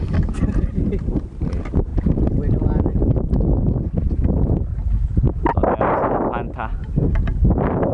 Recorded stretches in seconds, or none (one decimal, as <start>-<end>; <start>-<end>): 0.0-7.9

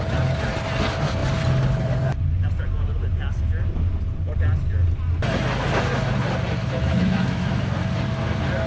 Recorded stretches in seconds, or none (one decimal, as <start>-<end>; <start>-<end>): 0.0-6.6; 7.6-8.7

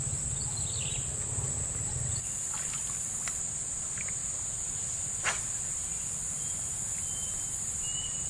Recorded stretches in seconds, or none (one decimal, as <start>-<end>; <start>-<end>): 0.0-8.3

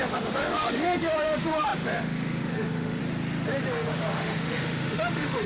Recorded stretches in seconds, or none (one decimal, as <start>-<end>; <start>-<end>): 3.0-3.7

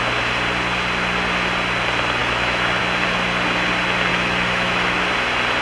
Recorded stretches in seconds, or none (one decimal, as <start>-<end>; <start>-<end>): 0.0-2.2; 2.8-4.1; 5.1-5.6

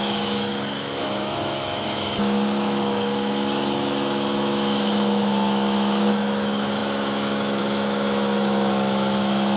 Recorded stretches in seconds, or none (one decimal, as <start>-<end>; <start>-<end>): none

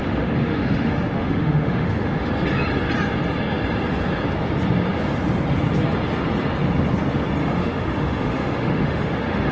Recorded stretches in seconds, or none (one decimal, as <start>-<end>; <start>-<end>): 2.3-7.4

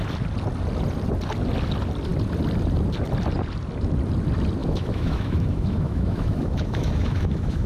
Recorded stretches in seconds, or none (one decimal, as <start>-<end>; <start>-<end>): 0.0-4.6